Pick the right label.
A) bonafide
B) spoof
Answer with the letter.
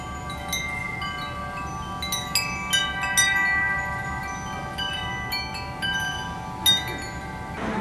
A